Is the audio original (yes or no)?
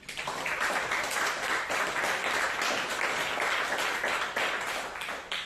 yes